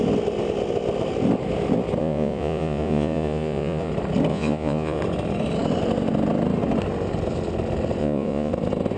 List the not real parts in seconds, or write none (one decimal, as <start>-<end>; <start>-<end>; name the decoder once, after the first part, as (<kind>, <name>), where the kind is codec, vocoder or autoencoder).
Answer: 2.0-3.9 (vocoder, Vocos); 4.3-5.0; 8.0-8.5